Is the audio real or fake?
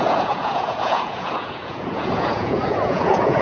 fake